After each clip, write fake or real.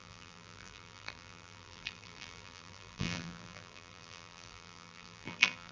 fake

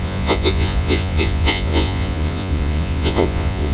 fake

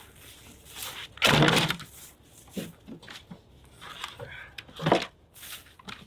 real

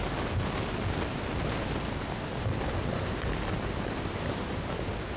real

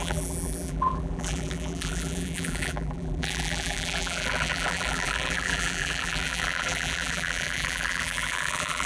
fake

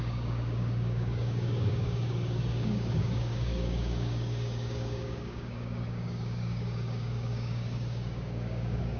fake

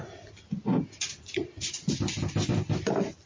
real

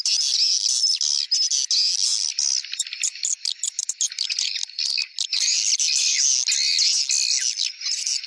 real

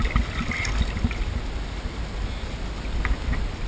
real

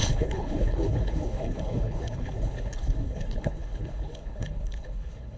fake